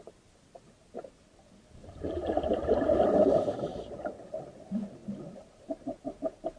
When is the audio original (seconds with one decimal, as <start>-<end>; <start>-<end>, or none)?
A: 0.0-1.8; 3.4-6.6